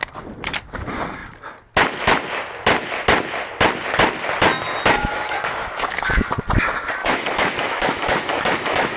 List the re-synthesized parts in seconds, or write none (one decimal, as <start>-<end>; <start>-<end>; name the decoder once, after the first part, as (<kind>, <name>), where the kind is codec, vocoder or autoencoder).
5.0-6.3 (autoencoder, DAC-VAE); 7.0-9.0